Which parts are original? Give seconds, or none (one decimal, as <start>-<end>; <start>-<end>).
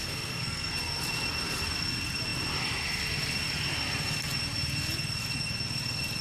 0.7-6.2